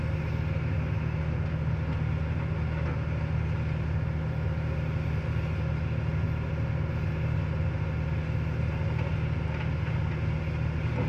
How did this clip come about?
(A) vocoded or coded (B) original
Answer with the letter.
B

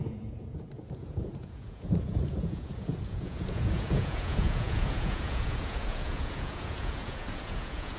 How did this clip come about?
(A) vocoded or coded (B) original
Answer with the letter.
A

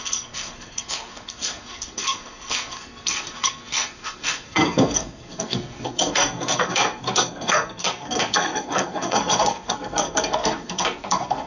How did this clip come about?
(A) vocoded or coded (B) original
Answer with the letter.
A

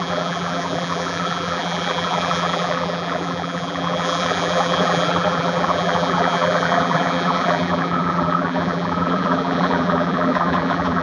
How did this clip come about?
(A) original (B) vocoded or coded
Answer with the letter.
B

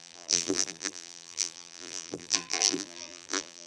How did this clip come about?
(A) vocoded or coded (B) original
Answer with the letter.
A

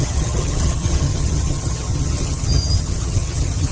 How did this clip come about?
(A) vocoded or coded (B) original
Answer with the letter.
A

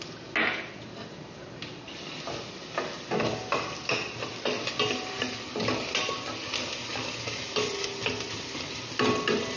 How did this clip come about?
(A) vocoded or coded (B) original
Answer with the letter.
B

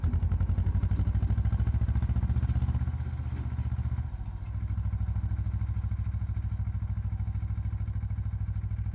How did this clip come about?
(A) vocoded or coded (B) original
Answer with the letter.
B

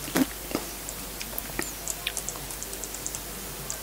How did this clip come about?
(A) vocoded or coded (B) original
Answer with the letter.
A